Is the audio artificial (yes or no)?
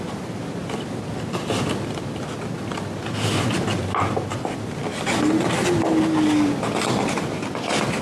no